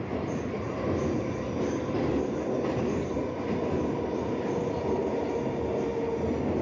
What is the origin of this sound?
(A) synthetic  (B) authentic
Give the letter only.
B